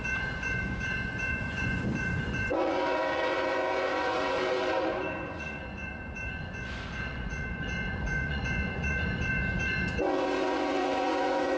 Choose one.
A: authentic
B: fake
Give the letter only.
B